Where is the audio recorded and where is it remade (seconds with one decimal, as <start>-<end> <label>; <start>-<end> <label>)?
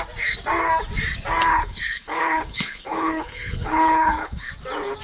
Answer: 0.0-1.5 recorded; 1.5-4.5 remade; 4.5-5.0 recorded